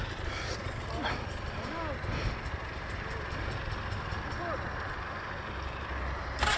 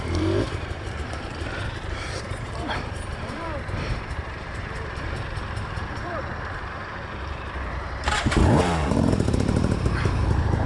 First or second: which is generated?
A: second